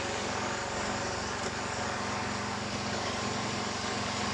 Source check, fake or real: fake